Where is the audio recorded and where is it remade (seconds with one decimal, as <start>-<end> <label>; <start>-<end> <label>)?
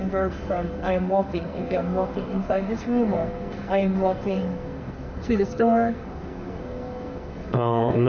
0.0-8.1 remade